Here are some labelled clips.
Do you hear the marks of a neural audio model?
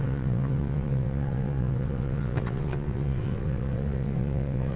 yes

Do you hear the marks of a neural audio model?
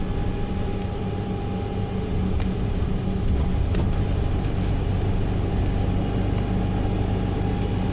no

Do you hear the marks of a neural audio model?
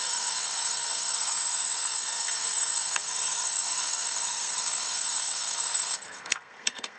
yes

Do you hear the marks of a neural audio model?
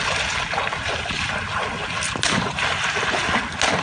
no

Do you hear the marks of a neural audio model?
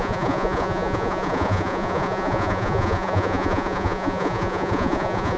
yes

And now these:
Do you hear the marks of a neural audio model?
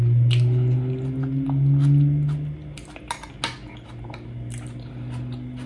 no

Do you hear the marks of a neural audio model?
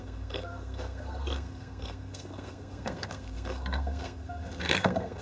yes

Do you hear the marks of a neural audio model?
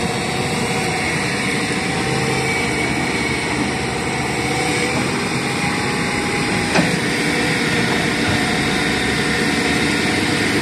no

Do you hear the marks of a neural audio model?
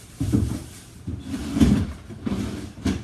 yes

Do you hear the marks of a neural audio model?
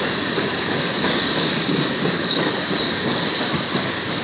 yes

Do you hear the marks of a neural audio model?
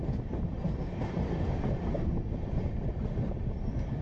no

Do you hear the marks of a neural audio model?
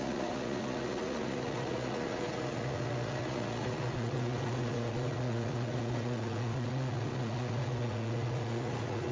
yes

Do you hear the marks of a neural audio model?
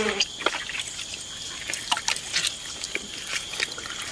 no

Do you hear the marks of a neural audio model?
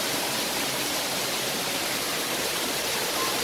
yes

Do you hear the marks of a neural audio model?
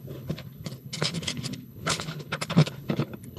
yes